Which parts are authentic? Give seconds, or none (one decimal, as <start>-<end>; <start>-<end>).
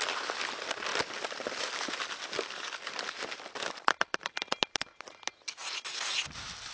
0.0-6.7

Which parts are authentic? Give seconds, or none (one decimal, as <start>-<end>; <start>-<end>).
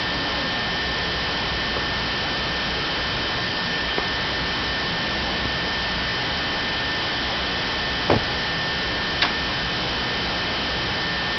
0.0-3.4; 4.0-11.4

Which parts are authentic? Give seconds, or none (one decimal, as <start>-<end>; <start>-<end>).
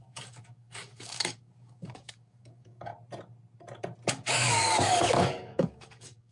2.9-4.1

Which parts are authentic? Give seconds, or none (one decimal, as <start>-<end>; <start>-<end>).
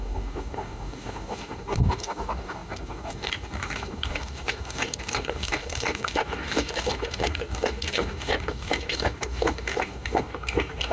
none